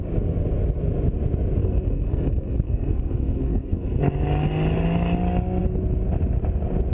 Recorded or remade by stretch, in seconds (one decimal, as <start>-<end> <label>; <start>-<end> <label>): 0.0-1.6 recorded; 1.6-4.0 remade; 4.0-6.9 recorded